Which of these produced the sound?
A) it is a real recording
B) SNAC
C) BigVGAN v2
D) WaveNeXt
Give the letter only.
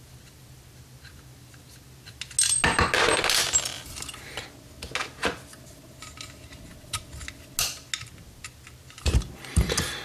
A